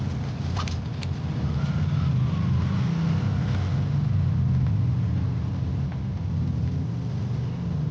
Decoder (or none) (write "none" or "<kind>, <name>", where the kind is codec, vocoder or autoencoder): none